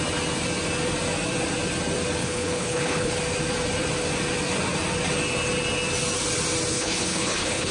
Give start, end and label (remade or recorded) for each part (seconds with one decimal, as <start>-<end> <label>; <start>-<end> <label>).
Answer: 0.0-2.2 recorded; 2.2-3.1 remade; 3.1-6.7 recorded; 6.7-7.7 remade